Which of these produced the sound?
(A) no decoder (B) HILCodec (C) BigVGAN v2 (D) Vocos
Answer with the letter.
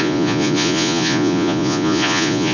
D